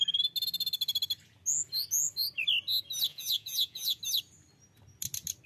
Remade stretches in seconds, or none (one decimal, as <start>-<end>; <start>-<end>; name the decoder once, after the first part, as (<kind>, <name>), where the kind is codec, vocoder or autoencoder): 3.1-4.0 (vocoder, Vocos)